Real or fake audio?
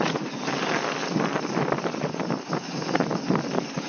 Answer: real